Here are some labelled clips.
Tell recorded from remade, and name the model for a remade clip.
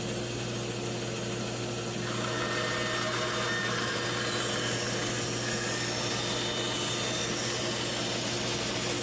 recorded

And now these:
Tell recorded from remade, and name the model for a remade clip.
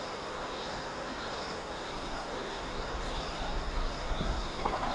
remade, codec, SNAC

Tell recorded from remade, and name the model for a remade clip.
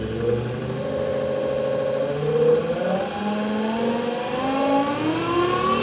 recorded